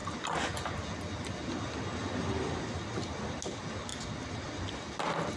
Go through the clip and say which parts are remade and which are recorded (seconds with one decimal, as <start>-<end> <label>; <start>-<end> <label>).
0.0-5.4 recorded